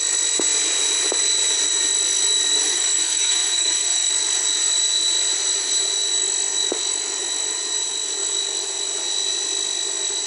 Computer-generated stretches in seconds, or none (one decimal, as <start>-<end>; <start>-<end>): 2.7-4.1